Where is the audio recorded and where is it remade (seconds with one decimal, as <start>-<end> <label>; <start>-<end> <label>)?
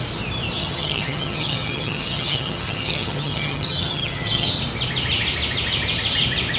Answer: 0.0-0.6 recorded; 0.6-4.6 remade; 4.6-6.6 recorded